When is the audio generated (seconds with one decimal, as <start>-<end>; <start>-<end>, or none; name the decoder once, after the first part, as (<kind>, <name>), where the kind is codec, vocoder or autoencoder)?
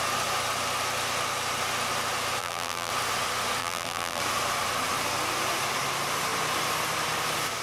2.4-2.9 (vocoder, BigVGAN v2); 3.6-4.2